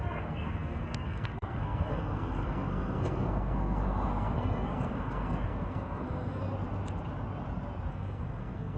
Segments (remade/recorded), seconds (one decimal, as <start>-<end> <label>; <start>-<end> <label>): 0.0-6.4 remade; 6.4-7.9 recorded; 7.9-8.8 remade